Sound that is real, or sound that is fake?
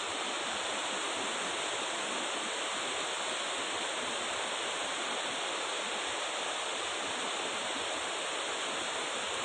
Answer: real